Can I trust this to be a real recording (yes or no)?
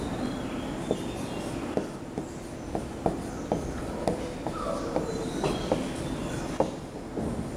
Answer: yes